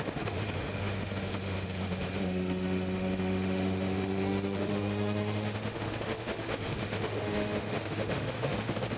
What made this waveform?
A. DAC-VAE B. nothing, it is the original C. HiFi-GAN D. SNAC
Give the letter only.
A